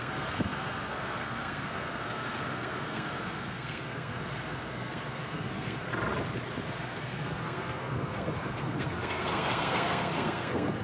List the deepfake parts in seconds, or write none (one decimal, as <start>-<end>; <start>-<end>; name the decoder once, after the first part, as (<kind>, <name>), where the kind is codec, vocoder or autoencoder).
0.0-5.9 (codec, SNAC); 6.7-10.8